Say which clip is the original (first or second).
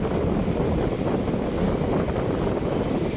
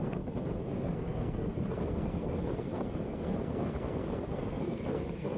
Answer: first